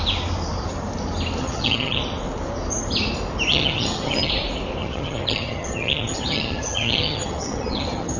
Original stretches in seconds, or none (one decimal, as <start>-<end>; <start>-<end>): 0.0-1.4; 2.0-3.5; 4.3-4.8